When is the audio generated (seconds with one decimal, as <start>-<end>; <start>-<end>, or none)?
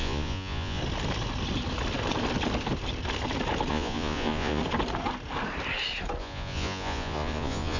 0.0-0.8; 3.7-4.6; 6.2-7.8